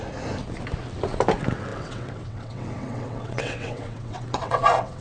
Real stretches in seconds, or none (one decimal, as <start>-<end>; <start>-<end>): 0.0-1.7